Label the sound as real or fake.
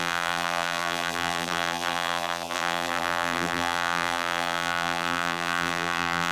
fake